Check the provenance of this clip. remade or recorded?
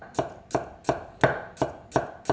recorded